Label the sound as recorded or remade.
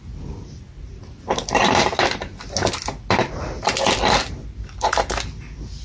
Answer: recorded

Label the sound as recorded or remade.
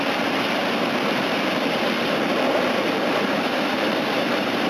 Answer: remade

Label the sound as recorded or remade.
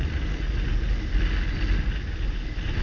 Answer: recorded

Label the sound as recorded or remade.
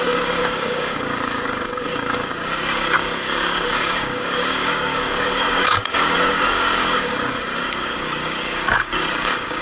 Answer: remade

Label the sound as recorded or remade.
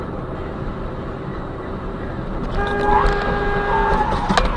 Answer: recorded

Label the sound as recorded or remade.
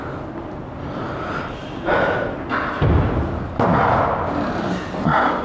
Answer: recorded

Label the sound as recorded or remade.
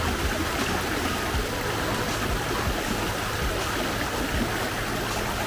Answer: recorded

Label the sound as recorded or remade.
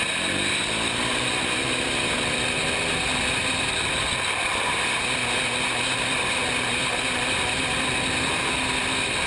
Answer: recorded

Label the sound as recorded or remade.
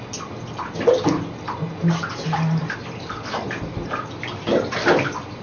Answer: recorded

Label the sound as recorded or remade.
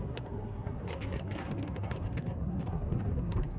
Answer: remade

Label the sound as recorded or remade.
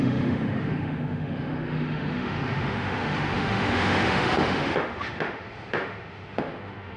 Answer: remade